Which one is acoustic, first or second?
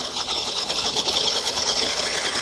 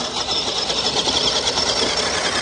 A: second